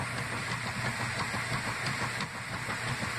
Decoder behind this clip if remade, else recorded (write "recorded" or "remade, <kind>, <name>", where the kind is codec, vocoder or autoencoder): recorded